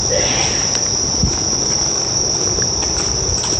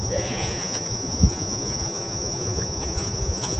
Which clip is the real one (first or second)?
first